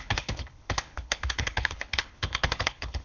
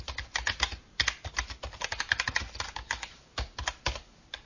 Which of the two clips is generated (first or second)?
first